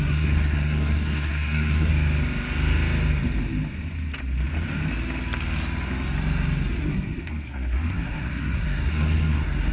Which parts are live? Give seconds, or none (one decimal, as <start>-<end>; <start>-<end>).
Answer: 1.9-6.8